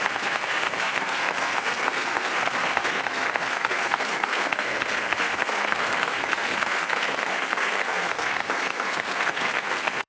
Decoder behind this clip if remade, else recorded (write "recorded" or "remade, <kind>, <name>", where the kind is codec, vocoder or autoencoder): remade, codec, SNAC